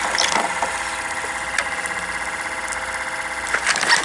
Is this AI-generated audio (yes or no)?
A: yes